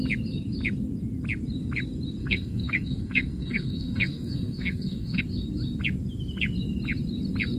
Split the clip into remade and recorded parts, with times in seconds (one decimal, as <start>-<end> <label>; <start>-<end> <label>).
0.0-2.2 recorded; 2.2-5.2 remade; 5.2-7.6 recorded